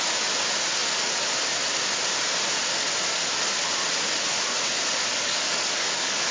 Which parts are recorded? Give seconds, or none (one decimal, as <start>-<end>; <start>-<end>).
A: 0.0-5.1